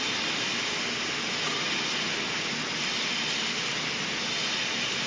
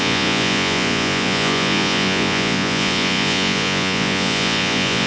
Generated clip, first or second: second